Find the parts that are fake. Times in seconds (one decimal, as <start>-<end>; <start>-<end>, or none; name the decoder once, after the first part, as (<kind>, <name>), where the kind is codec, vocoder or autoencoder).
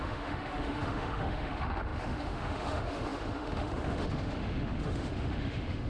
0.0-5.9 (autoencoder, DAC-VAE)